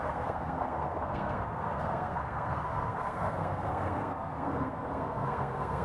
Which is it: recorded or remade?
remade